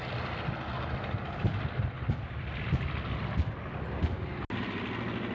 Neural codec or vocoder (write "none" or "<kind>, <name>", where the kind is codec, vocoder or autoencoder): none